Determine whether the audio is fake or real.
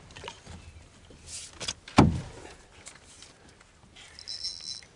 real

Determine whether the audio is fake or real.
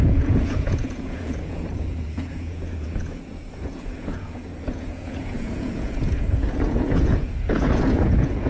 fake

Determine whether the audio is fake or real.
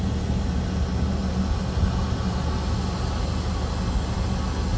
real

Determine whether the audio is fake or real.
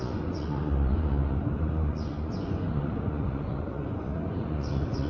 fake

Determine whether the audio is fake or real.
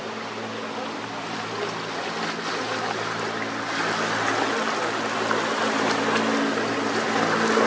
real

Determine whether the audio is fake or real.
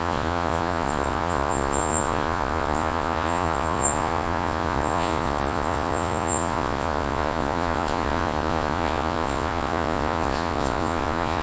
fake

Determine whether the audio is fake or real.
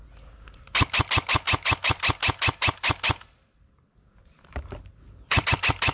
real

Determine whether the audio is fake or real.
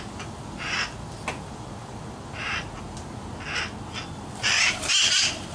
real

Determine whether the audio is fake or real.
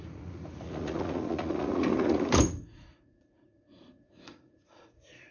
fake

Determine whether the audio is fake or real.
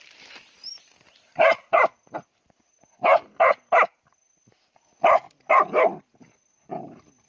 real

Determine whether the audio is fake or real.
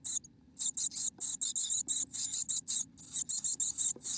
real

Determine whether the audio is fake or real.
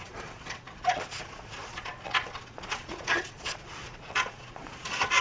fake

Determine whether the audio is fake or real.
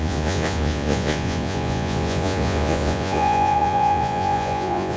fake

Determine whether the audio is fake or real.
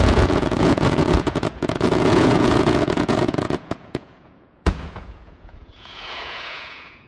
fake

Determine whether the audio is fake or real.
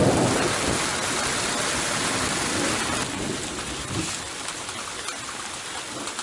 real